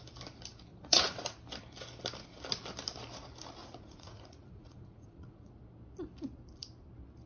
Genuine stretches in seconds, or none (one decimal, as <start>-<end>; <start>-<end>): 0.0-0.7; 1.2-3.6; 5.5-7.3